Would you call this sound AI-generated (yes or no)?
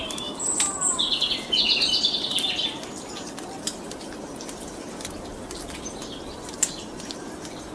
no